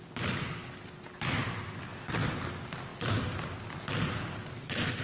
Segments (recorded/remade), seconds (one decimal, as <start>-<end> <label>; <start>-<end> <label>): 0.0-1.9 recorded; 1.9-2.5 remade; 2.5-5.0 recorded